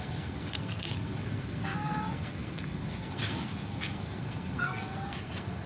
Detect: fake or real fake